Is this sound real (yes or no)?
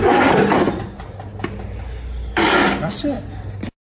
yes